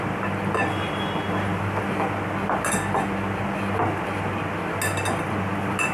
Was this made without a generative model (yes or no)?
yes